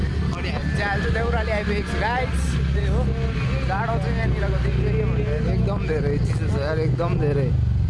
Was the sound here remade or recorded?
recorded